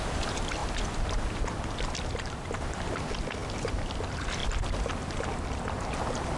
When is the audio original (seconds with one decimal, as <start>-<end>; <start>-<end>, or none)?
0.0-6.4